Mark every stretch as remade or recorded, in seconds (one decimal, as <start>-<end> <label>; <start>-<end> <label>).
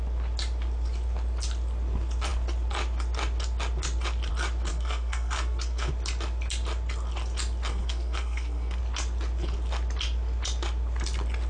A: 0.0-4.7 recorded; 4.7-5.9 remade; 5.9-7.7 recorded; 7.7-8.8 remade; 8.8-11.5 recorded